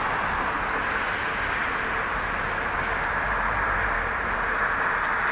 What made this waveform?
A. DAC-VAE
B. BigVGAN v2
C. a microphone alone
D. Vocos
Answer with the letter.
C